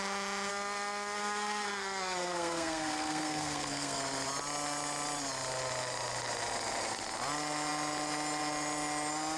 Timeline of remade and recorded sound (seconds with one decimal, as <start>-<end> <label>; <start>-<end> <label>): 0.0-0.5 recorded; 0.5-4.0 remade; 4.0-9.4 recorded